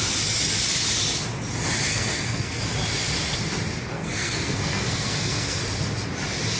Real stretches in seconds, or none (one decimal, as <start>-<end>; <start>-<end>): 0.0-1.9; 2.6-3.9; 5.6-6.6